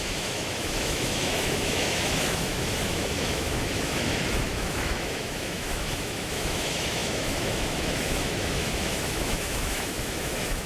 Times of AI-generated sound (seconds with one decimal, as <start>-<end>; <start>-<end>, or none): 0.0-10.7